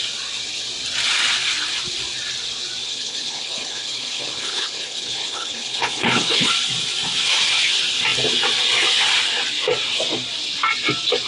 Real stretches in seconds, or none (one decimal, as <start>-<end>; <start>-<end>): 0.0-2.8; 6.5-11.3